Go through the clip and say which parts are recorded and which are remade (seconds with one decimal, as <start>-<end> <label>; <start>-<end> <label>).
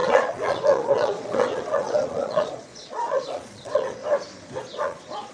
0.0-4.0 remade; 4.0-4.6 recorded; 4.6-5.3 remade